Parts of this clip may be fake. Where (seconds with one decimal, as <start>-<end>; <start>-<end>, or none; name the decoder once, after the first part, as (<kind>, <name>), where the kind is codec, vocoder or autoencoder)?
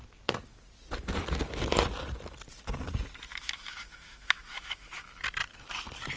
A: 3.3-5.1 (autoencoder, DAC-VAE)